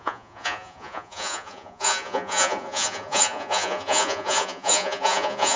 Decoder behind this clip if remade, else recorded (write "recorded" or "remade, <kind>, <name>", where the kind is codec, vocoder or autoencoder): remade, vocoder, Vocos